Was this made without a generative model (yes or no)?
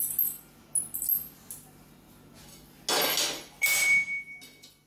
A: yes